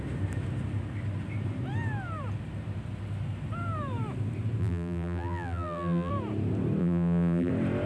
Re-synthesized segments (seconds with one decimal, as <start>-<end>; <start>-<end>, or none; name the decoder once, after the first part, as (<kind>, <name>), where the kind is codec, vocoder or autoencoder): 4.6-6.1 (vocoder, BigVGAN v2); 6.8-7.5